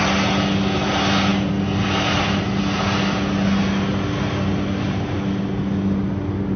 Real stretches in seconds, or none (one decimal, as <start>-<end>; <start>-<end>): 0.0-6.6